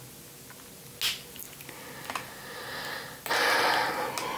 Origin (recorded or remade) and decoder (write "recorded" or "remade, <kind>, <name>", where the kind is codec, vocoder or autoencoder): recorded